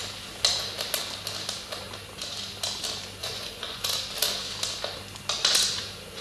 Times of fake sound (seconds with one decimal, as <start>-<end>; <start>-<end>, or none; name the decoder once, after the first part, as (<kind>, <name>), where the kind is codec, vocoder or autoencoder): 3.2-3.8 (vocoder, Vocos)